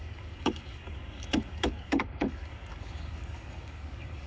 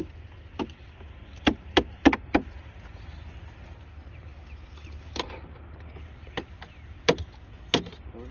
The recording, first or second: second